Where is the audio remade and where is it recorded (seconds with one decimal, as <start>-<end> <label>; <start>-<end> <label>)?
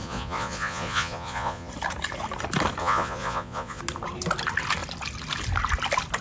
0.0-1.7 remade; 1.7-2.8 recorded; 2.8-3.8 remade; 3.8-6.2 recorded